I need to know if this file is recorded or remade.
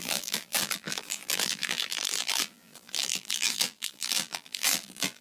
remade